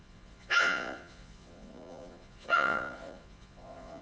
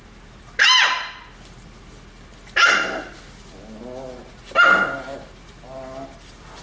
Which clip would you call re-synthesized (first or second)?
first